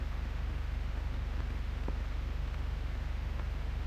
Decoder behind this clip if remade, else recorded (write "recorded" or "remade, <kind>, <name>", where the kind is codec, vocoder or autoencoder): remade, autoencoder, DAC-VAE